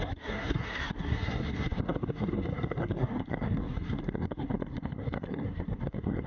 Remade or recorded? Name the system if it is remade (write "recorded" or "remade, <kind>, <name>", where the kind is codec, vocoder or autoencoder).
remade, codec, SNAC